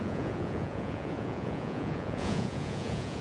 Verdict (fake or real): fake